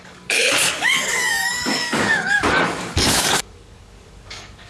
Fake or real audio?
fake